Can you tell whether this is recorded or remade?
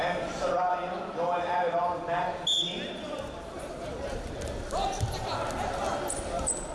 recorded